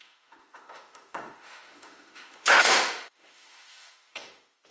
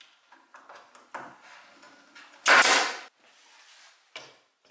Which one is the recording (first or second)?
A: second